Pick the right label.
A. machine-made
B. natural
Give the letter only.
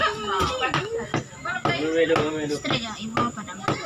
B